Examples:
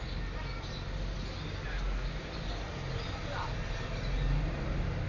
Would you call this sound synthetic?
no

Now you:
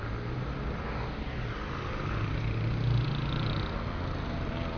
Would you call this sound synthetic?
no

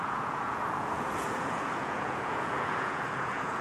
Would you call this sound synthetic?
yes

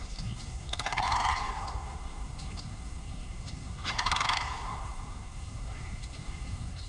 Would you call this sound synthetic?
yes